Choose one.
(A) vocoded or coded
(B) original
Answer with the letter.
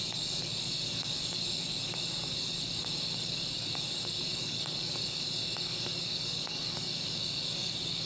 A